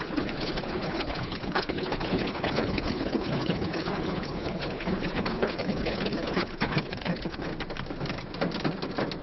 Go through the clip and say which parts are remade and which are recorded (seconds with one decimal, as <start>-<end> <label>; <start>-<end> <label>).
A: 0.0-7.5 remade; 7.5-9.2 recorded